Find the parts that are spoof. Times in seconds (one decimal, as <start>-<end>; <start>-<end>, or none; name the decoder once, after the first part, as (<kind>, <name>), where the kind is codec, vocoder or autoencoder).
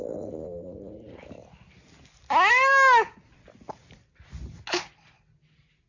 none